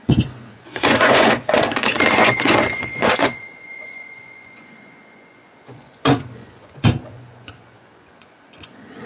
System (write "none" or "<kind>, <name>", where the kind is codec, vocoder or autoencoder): vocoder, Vocos